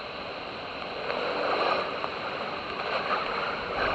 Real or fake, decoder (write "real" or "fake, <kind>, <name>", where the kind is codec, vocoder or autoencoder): real